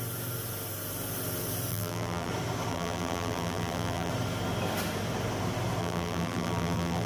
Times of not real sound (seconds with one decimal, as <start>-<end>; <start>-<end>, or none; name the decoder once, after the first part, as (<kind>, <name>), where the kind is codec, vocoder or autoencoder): 1.7-2.3 (vocoder, BigVGAN v2); 2.7-4.1; 5.8-7.1